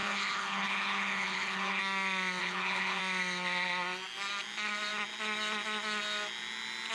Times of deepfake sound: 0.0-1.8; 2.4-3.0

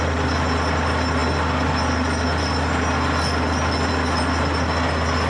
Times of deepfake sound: none

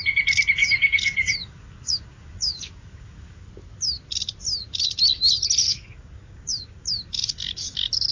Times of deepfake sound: 0.6-3.5; 5.6-8.1

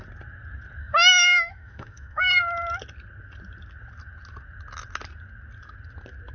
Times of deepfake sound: 0.8-2.2

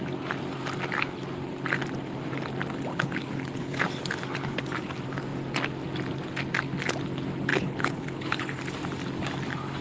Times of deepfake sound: 2.9-3.8; 7.5-8.6

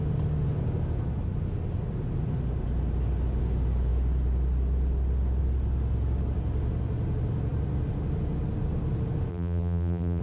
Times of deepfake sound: 9.3-10.2